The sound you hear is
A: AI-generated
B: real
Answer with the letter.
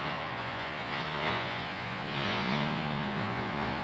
A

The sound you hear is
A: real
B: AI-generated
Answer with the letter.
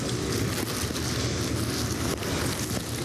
A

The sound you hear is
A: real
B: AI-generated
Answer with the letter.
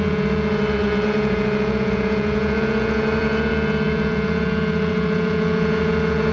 B